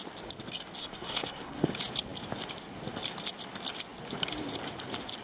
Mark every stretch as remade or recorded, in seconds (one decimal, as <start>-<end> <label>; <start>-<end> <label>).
0.0-0.8 recorded; 0.8-1.7 remade; 1.7-5.2 recorded